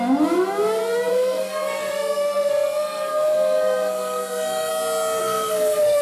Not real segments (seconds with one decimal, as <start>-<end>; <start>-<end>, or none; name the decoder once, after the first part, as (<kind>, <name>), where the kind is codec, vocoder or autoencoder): 1.1-4.7 (codec, SNAC); 5.2-6.0